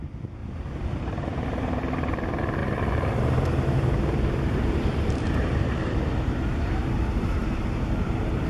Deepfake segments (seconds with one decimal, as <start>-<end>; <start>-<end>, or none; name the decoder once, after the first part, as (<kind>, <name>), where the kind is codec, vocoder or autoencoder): 0.0-0.4 (vocoder, BigVGAN v2); 1.0-8.5